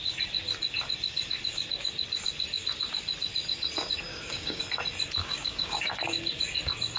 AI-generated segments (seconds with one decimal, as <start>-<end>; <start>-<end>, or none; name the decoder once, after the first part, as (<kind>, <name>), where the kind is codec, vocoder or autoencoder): 4.1-4.6 (codec, DAC); 5.2-5.9